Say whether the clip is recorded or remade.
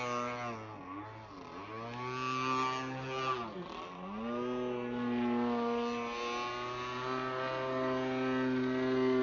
recorded